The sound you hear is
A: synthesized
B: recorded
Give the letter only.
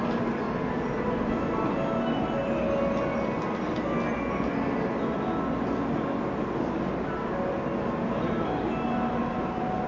B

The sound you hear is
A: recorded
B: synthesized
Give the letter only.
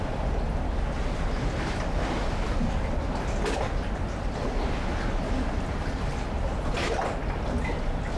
A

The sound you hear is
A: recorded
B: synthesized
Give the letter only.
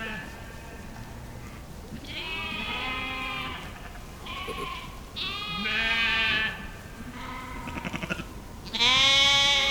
A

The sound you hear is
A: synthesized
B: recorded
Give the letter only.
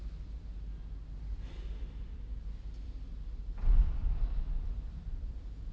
A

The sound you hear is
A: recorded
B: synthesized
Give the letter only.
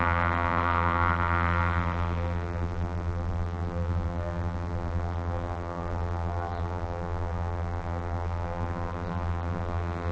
B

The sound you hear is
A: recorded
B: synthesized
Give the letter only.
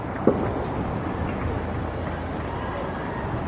B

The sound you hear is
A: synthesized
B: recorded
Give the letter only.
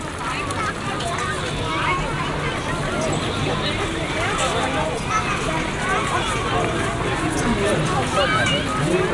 B